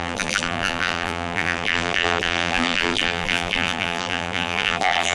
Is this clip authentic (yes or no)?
no